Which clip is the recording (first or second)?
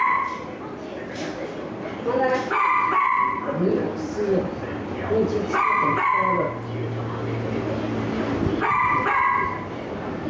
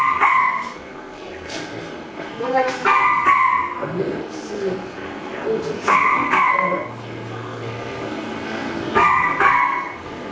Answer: first